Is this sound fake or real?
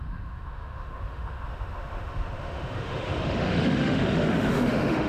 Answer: fake